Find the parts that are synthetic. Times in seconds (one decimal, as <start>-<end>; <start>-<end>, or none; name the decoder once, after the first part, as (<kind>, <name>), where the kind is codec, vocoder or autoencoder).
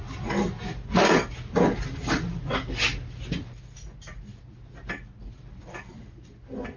none